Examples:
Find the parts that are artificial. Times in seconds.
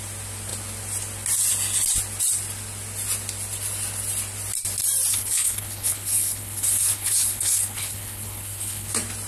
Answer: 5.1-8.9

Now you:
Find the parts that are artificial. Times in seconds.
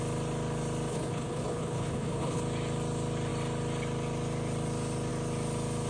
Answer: 0.9-2.4